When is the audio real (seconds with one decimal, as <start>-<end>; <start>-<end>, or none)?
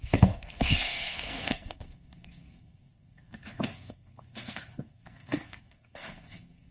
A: none